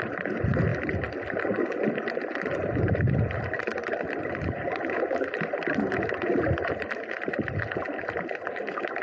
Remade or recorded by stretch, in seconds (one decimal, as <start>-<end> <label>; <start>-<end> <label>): 0.0-0.7 recorded; 0.7-4.2 remade; 4.2-9.0 recorded